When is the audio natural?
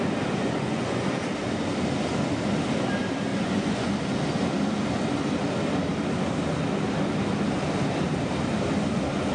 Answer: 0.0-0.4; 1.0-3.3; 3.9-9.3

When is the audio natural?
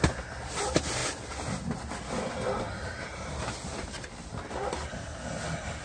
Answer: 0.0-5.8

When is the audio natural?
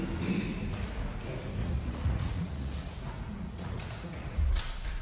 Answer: 0.0-1.6; 4.6-5.0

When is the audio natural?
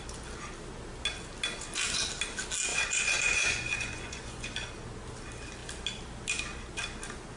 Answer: 0.0-2.7; 4.5-7.4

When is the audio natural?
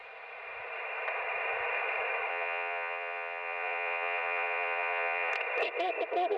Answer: 0.0-2.3; 5.3-6.4